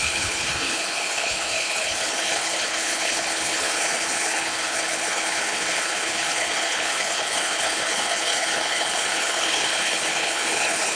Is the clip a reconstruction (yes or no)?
yes